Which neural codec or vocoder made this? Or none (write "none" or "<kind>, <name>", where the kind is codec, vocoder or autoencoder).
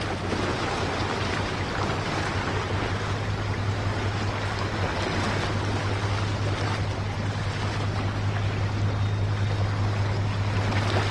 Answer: none